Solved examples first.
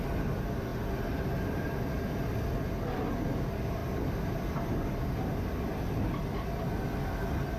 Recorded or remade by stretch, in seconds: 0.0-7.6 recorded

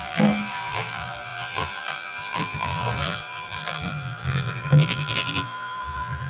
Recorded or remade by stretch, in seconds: 0.0-6.3 remade

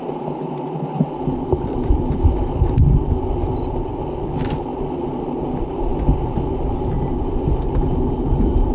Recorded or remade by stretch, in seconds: 0.0-8.7 recorded

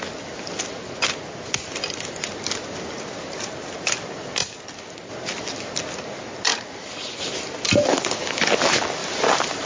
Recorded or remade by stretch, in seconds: 0.0-6.5 recorded; 6.5-7.2 remade; 7.2-9.0 recorded; 9.0-9.7 remade